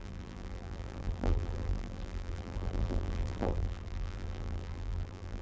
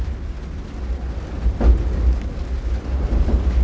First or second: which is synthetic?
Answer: first